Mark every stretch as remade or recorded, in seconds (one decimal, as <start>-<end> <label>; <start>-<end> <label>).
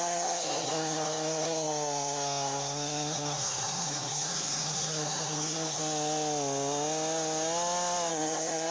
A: 0.0-5.8 remade; 5.8-8.1 recorded; 8.1-8.7 remade